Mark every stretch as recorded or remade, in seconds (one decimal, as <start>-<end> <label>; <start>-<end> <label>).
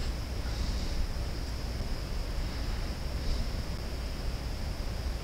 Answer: 0.0-5.2 recorded